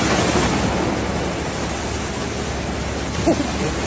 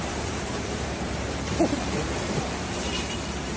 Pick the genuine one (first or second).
first